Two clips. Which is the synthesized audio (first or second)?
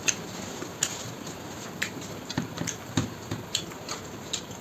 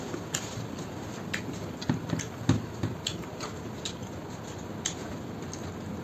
first